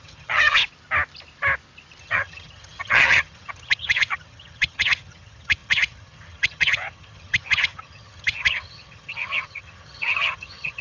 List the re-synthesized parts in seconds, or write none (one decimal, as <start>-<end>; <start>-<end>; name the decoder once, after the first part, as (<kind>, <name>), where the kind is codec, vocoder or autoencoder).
0.0-0.6 (vocoder, HiFi-GAN); 2.0-10.8